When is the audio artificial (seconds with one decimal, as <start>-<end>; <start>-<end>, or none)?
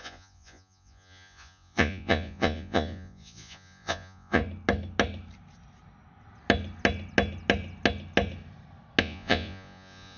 0.0-4.4; 9.0-10.2